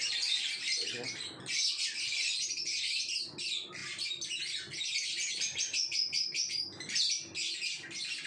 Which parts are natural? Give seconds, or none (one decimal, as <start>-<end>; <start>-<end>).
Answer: 0.0-8.3

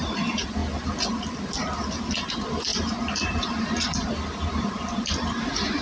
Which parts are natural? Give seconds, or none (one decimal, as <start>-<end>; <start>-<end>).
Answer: 0.6-2.3